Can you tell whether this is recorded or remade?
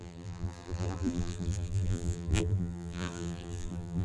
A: remade